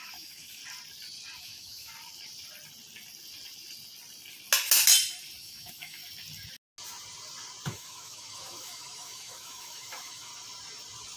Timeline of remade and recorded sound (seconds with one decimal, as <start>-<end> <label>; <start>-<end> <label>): 0.0-0.6 remade; 0.6-1.4 recorded; 1.4-1.9 remade; 1.9-5.4 recorded; 5.4-6.0 remade; 6.0-7.7 recorded; 7.7-10.3 remade; 10.3-11.2 recorded